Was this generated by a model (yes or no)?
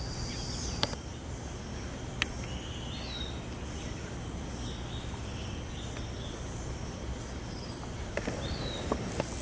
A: no